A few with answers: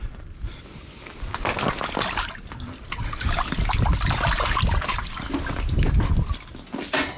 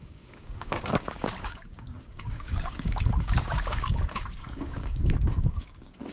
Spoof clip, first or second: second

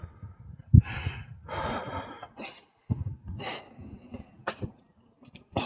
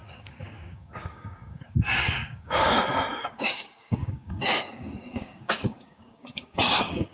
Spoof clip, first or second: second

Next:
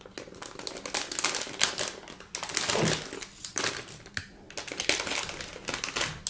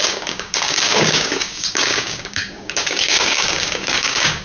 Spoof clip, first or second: second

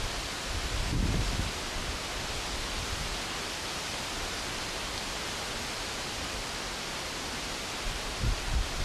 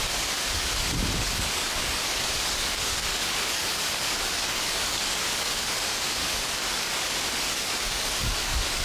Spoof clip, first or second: second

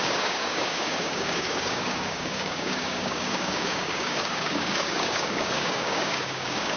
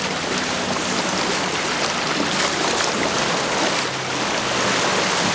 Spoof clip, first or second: first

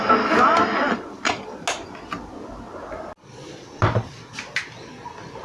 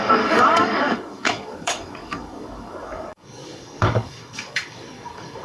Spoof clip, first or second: second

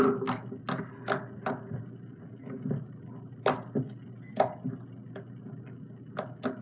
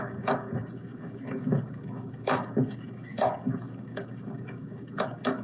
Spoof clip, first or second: second